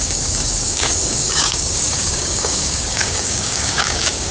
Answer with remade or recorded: remade